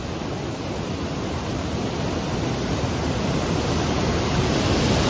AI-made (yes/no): no